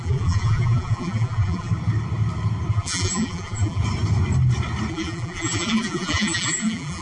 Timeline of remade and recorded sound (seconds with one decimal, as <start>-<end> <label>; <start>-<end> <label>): 0.0-1.7 remade; 1.7-2.7 recorded; 2.7-3.8 remade; 3.8-4.9 recorded; 4.9-7.0 remade